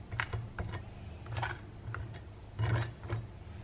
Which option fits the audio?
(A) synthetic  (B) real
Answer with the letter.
B